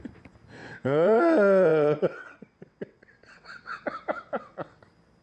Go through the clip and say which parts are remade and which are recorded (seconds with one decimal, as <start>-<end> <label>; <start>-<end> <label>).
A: 0.0-0.6 recorded; 0.6-1.2 remade; 1.2-1.7 recorded; 1.7-4.8 remade; 4.8-5.2 recorded